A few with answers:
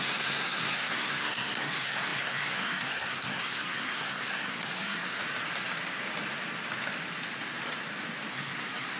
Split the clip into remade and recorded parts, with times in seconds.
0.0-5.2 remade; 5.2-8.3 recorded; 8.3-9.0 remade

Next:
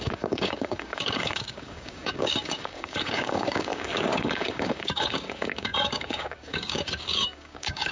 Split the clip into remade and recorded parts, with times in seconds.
0.0-7.9 remade

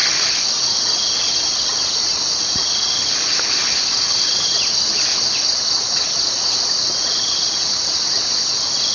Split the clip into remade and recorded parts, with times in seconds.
0.0-7.4 recorded; 7.4-8.1 remade; 8.1-8.9 recorded

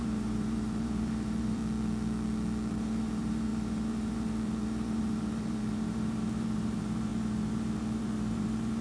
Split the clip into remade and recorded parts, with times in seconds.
0.0-1.6 remade; 1.6-2.7 recorded; 2.7-8.8 remade

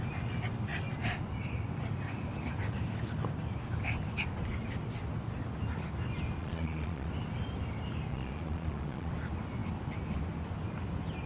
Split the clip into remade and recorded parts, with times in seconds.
0.0-6.4 recorded; 6.4-7.1 remade; 7.1-8.1 recorded; 8.1-9.1 remade; 9.1-11.3 recorded

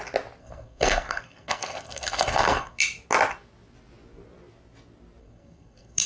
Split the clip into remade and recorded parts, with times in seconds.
0.0-0.4 recorded; 0.4-2.8 remade; 2.8-5.2 recorded; 5.2-6.1 remade